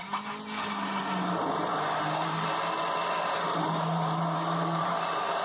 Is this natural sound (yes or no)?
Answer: yes